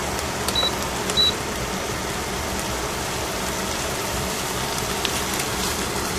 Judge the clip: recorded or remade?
remade